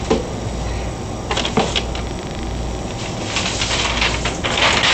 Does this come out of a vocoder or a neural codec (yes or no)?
no